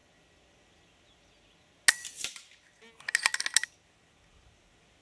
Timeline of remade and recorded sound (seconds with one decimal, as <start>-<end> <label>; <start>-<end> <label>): 0.0-5.0 recorded